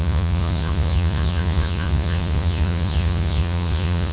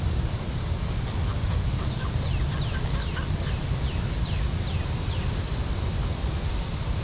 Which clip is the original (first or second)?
second